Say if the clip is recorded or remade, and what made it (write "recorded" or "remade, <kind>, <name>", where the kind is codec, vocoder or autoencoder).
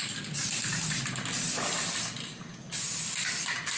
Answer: remade, vocoder, BigVGAN v2